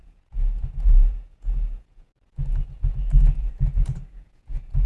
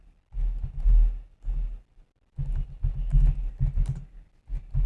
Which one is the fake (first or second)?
first